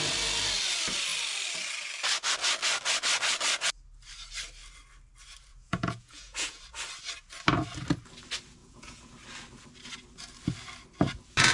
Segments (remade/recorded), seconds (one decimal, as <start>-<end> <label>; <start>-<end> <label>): 0.0-5.5 recorded; 5.5-6.6 remade; 6.6-8.6 recorded; 8.6-9.1 remade; 9.1-11.5 recorded